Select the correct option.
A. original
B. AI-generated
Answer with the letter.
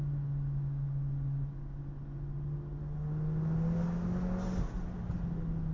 A